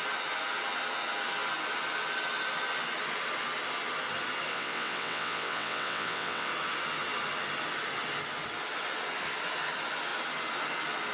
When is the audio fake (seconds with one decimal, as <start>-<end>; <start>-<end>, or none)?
4.5-6.5